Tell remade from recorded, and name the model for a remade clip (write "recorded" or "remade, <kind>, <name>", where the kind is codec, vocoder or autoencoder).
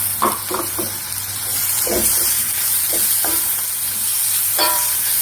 remade, vocoder, BigVGAN v2